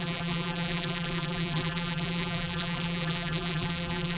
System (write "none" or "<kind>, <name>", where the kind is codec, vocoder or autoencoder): vocoder, BigVGAN v2